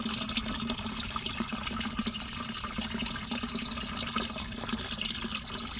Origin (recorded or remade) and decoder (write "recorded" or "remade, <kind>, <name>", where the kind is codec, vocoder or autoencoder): recorded